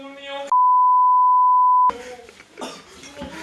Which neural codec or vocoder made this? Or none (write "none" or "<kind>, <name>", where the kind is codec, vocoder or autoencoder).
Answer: none